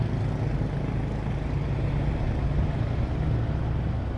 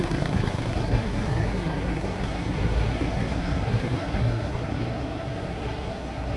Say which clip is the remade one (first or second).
second